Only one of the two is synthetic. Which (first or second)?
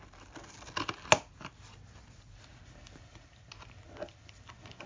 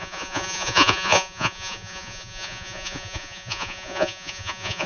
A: second